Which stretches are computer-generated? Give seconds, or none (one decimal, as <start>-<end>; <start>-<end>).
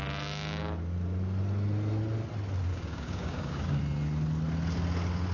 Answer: 2.7-3.8